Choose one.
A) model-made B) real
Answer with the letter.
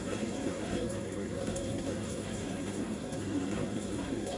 A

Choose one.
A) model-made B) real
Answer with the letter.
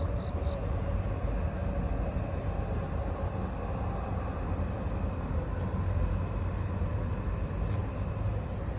B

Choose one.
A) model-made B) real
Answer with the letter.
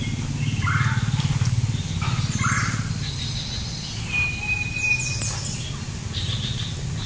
B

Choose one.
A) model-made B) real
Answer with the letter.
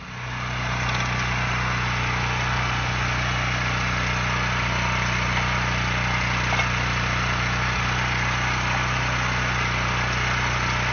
B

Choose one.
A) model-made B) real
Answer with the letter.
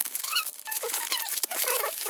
A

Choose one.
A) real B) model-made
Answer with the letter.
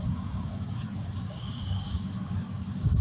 B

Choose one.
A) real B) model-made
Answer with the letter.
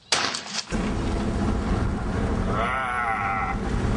A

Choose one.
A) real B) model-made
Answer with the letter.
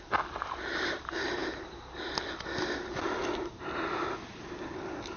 A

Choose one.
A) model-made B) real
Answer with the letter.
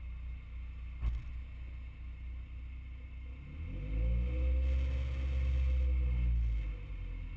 B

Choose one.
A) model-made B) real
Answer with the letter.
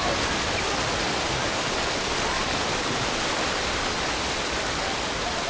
B